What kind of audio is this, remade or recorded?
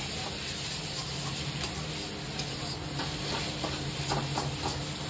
recorded